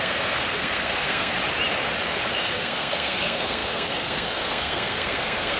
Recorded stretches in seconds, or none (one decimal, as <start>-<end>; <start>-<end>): 1.3-2.3